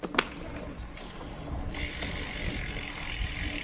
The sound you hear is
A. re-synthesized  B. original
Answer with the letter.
B